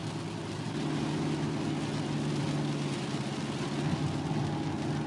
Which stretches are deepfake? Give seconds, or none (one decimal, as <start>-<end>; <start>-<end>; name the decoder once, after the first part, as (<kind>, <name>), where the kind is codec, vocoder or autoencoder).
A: none